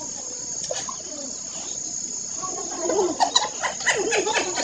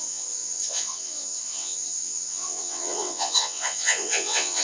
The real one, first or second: first